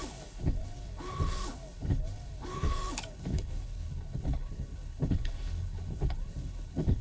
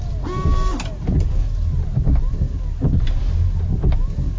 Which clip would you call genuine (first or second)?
second